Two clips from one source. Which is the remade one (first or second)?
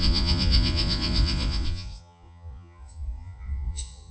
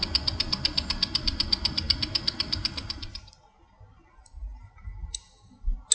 first